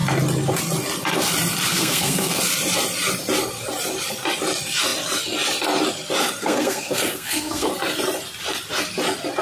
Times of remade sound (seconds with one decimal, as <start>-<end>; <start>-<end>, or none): 1.7-2.4; 6.4-7.7